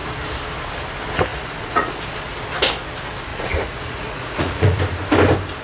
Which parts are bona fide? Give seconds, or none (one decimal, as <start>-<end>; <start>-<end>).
0.0-1.3; 2.0-3.3; 4.8-5.6